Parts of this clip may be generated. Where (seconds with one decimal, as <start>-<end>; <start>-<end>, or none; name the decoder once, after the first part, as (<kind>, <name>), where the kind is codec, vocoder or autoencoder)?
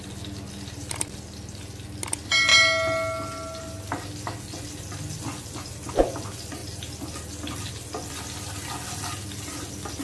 none